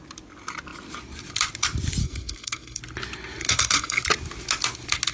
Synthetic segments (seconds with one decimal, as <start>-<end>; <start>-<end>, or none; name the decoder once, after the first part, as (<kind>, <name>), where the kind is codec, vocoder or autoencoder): 2.0-2.8 (codec, SNAC); 3.4-4.0